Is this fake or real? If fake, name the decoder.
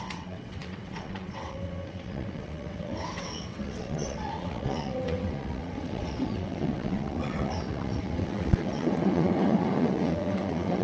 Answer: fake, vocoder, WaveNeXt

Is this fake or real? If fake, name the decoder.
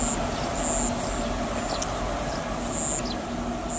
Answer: real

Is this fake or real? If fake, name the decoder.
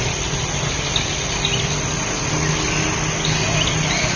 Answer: real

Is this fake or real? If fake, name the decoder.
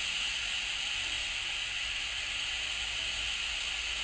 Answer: real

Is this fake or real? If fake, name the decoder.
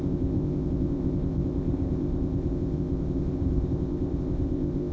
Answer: fake, codec, ZipCodec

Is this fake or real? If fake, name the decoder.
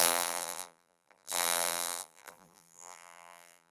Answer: fake, vocoder, BigVGAN v2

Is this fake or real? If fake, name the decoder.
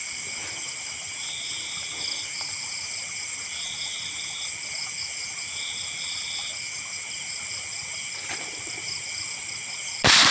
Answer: real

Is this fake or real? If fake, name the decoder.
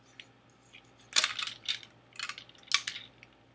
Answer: real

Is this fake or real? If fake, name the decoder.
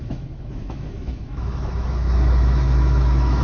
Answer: fake, autoencoder, DAC-VAE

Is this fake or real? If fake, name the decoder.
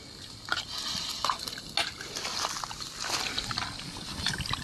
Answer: real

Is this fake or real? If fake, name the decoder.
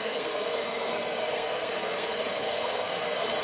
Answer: fake, codec, SNAC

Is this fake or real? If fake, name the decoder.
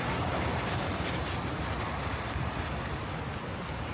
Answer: real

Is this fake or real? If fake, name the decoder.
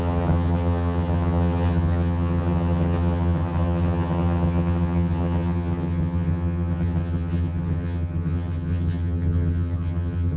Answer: fake, vocoder, HiFi-GAN